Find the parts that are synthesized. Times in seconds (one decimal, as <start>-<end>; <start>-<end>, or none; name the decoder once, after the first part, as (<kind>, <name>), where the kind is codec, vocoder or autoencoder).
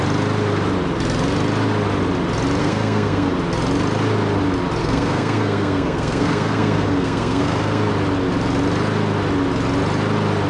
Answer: 2.6-3.3 (codec, SNAC); 4.8-7.9